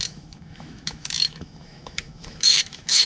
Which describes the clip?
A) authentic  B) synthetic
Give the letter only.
B